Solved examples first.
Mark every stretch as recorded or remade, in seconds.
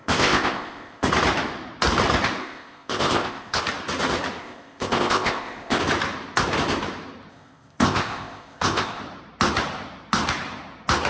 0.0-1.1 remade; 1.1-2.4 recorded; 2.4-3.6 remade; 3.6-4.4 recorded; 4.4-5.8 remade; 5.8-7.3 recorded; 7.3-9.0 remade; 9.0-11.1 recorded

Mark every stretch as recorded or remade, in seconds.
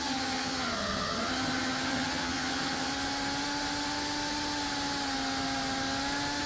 0.0-2.9 remade; 2.9-6.5 recorded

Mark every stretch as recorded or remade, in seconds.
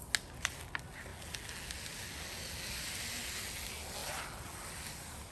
0.0-5.3 recorded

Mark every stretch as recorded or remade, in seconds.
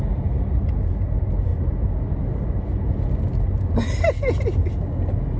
0.0-5.4 recorded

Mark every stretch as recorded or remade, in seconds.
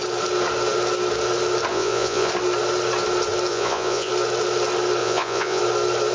0.0-1.7 recorded; 1.7-2.3 remade; 2.3-3.5 recorded; 3.5-4.1 remade; 4.1-5.0 recorded; 5.0-5.6 remade; 5.6-6.1 recorded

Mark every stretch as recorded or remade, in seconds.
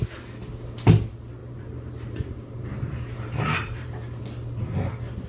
0.0-1.4 recorded; 1.4-4.2 remade; 4.2-5.3 recorded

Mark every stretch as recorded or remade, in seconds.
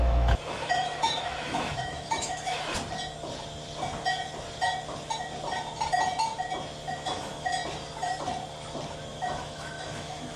0.0-2.7 remade; 2.7-6.9 recorded; 6.9-7.6 remade; 7.6-9.1 recorded; 9.1-10.4 remade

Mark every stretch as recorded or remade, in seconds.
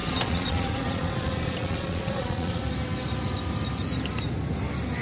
0.0-2.6 remade; 2.6-5.0 recorded